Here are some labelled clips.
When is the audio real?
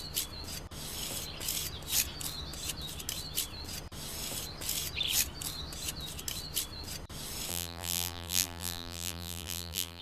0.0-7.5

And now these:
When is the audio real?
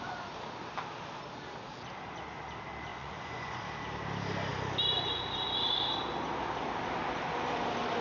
0.0-2.9; 3.6-8.0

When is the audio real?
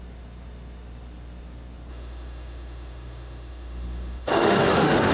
0.0-1.9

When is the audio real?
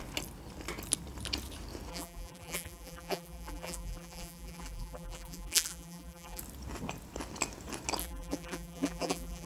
0.0-1.9; 6.4-8.0